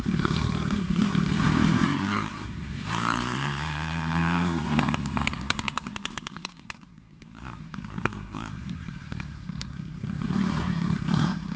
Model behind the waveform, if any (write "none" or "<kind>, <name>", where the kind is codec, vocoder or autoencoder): codec, SNAC